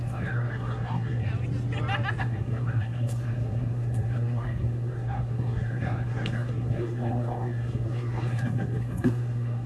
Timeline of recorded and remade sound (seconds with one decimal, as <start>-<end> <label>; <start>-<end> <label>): 0.0-1.3 remade; 1.3-2.2 recorded; 2.2-9.7 remade